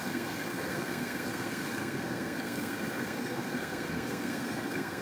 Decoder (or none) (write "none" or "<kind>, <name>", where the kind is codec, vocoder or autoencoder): codec, SNAC